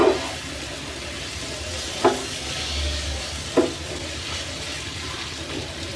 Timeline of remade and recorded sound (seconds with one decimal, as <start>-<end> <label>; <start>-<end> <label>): 0.0-2.2 recorded; 2.2-3.2 remade; 3.2-6.0 recorded